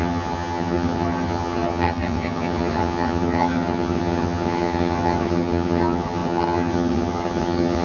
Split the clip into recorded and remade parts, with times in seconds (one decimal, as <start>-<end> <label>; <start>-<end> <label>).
0.0-7.8 remade